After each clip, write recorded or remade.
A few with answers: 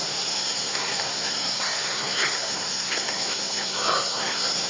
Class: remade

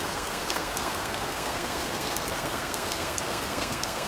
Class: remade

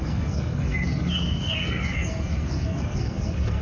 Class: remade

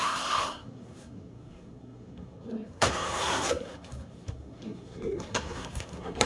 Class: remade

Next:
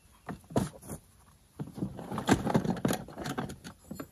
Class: recorded